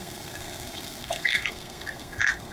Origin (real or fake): fake